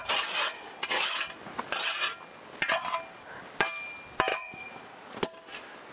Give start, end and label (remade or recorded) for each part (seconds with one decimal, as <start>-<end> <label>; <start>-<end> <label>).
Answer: 0.0-1.2 remade; 1.2-4.3 recorded; 4.3-5.2 remade; 5.2-5.9 recorded